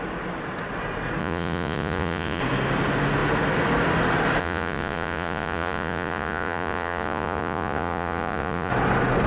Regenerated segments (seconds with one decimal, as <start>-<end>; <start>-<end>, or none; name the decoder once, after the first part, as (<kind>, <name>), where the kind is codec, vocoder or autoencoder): 1.2-2.4 (vocoder, Vocos); 4.4-8.7